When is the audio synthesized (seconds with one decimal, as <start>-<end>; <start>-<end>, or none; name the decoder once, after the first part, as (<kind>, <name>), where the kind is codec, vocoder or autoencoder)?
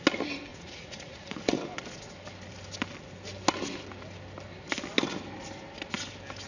0.5-1.6 (vocoder, Vocos)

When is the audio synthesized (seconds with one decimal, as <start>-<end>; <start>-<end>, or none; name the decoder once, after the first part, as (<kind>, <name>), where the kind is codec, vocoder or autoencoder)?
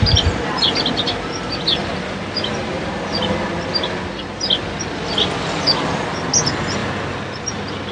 none